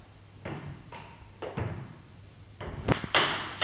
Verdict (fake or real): fake